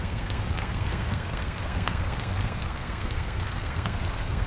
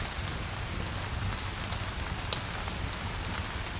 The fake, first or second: first